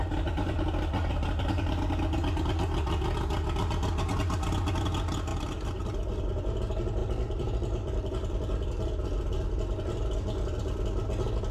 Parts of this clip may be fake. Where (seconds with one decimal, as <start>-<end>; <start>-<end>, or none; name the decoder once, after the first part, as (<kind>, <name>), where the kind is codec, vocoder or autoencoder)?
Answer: 0.0-0.6 (vocoder, BigVGAN v2); 5.3-6.6; 7.0-10.1